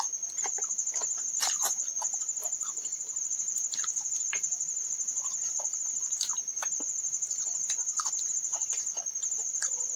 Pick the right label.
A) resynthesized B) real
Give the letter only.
A